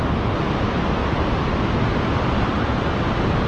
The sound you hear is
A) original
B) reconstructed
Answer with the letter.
A